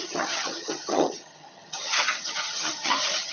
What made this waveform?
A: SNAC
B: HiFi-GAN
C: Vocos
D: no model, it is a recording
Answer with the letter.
B